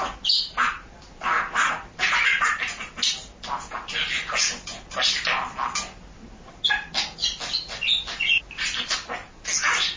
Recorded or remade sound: recorded